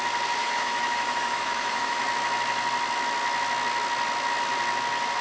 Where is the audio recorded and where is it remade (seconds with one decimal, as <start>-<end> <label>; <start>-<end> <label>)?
0.0-0.4 recorded; 0.4-2.0 remade; 2.0-5.2 recorded